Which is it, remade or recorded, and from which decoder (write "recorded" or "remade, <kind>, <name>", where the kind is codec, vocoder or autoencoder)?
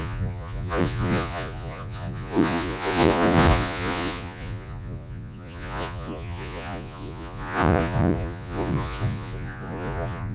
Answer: remade, vocoder, Vocos